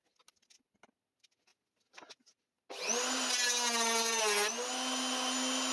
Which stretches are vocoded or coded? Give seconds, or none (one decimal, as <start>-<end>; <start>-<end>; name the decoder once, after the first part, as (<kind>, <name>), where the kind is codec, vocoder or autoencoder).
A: none